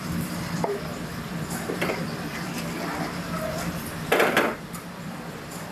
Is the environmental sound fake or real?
fake